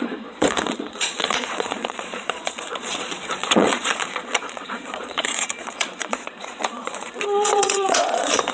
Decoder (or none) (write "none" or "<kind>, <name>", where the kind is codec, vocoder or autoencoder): vocoder, Vocos